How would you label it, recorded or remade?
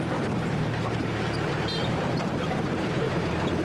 remade